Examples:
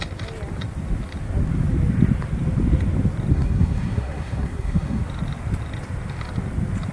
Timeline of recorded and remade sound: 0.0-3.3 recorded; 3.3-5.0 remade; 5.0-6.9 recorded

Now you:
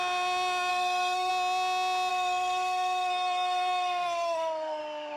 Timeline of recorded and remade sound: 0.0-0.7 recorded; 0.7-1.3 remade; 1.3-2.1 recorded; 2.1-4.8 remade; 4.8-5.2 recorded

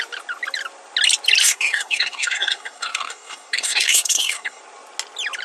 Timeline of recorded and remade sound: 0.0-1.4 recorded; 1.4-4.6 remade; 4.6-5.4 recorded

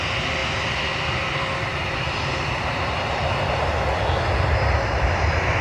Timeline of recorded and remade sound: 0.0-5.6 recorded